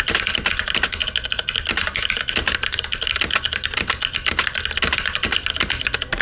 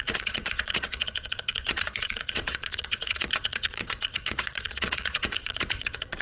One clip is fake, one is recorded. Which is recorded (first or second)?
first